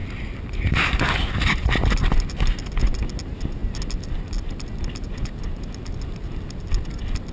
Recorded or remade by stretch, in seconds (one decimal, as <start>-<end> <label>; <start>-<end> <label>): 0.0-7.3 recorded